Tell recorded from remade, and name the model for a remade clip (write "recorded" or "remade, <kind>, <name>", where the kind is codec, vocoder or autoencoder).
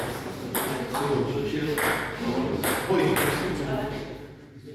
remade, vocoder, BigVGAN v2